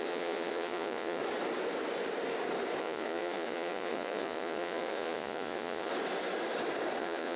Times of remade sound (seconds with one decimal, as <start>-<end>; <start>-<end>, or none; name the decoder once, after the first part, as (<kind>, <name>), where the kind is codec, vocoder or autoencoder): 0.0-1.2 (vocoder, Vocos); 2.8-5.9; 7.0-7.4